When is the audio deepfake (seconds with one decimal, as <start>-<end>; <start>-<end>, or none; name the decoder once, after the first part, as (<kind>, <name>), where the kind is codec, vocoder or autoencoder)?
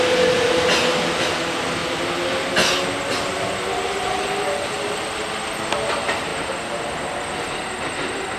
none